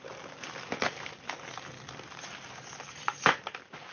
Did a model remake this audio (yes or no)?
no